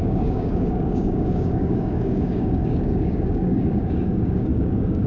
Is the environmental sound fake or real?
fake